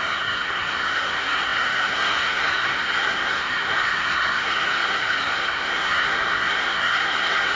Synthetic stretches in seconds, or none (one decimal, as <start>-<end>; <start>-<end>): 0.0-7.6